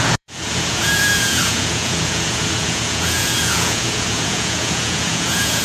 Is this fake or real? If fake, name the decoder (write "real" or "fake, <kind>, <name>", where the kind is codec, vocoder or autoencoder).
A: fake, vocoder, Vocos